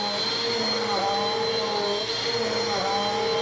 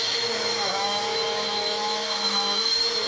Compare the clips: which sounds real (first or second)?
first